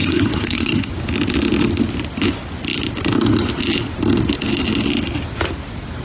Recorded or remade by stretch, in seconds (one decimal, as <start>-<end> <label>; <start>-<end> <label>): 0.0-0.9 remade; 0.9-6.0 recorded